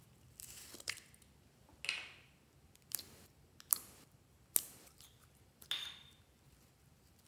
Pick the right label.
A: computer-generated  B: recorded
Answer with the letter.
B